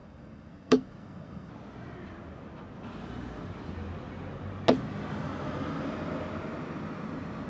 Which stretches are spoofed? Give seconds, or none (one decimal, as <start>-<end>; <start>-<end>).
0.0-1.5